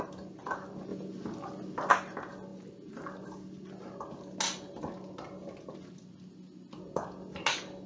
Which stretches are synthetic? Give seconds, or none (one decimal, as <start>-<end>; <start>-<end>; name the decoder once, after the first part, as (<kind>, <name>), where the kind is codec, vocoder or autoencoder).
none